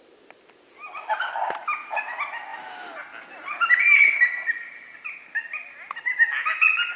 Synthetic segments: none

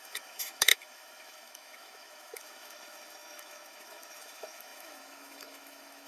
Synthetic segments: 0.0-6.1 (autoencoder, DAC-VAE)

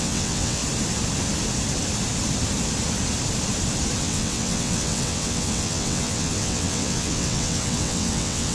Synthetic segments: 0.0-0.6 (vocoder, WaveNeXt); 4.0-8.5

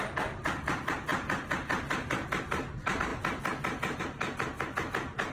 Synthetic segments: none

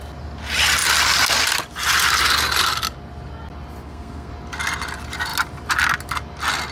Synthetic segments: 3.8-4.3 (codec, SNAC)

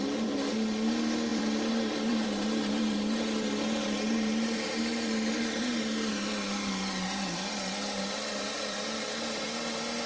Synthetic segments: 1.3-6.1 (vocoder, BigVGAN v2)